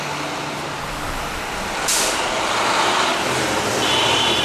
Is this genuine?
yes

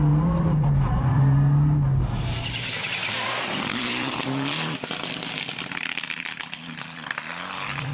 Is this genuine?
no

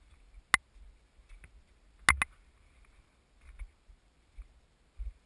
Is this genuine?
yes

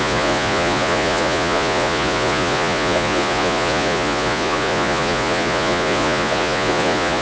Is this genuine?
no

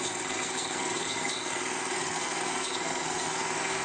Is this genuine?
no